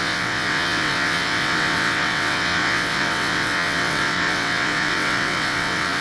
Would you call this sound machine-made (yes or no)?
yes